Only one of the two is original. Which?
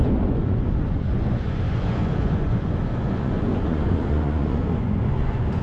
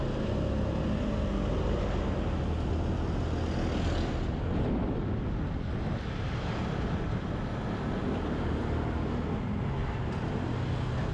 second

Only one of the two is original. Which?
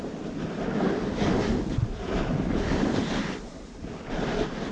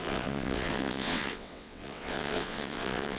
first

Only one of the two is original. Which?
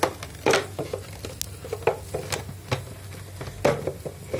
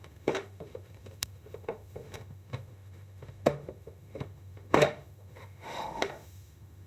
first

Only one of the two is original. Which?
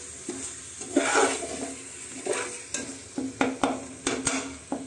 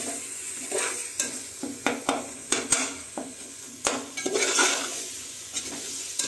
first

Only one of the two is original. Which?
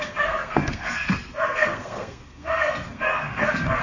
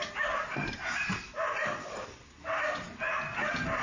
second